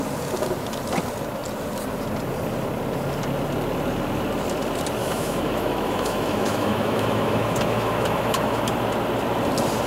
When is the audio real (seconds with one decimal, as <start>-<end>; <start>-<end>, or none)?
0.0-5.0; 8.6-9.9